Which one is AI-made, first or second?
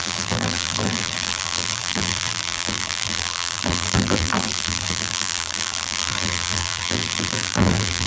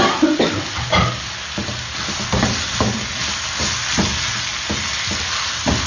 first